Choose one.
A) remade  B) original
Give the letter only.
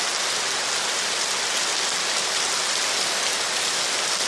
B